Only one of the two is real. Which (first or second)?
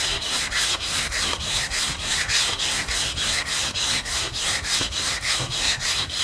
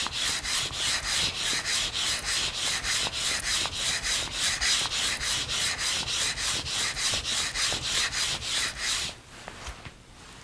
second